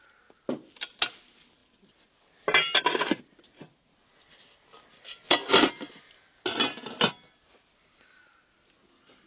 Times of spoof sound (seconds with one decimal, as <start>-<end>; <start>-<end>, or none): none